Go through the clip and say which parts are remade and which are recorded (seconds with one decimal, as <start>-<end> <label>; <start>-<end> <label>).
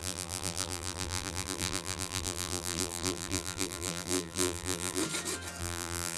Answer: 0.0-5.0 remade; 5.0-5.6 recorded; 5.6-6.2 remade